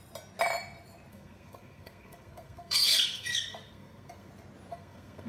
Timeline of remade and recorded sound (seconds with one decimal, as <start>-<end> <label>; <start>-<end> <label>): 0.0-1.1 recorded; 1.1-4.3 remade; 4.3-4.7 recorded; 4.7-5.3 remade